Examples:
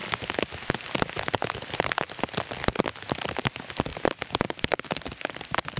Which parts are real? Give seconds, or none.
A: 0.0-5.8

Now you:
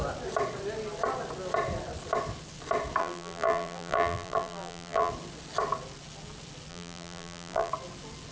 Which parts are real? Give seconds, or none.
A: 0.0-3.0; 5.1-6.7; 7.7-8.3

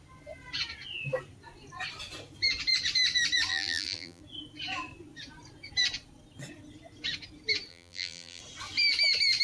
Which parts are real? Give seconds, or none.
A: 0.0-3.5; 4.2-7.7; 8.4-9.4